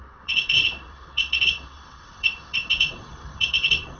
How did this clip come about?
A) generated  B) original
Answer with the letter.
A